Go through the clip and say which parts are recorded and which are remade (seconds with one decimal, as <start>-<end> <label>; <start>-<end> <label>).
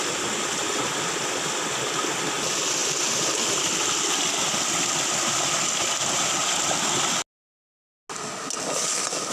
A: 0.0-2.8 recorded; 2.8-4.4 remade; 4.4-9.3 recorded